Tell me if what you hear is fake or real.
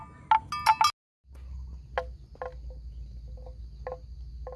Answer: real